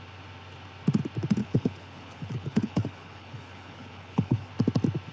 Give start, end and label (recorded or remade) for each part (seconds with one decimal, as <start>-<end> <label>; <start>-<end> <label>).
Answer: 0.0-1.4 recorded; 1.4-4.5 remade; 4.5-5.1 recorded